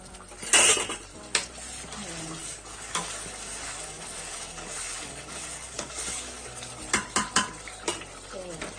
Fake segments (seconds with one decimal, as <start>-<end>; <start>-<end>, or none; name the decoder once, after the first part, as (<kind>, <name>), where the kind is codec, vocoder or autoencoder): 2.4-6.7 (codec, DAC)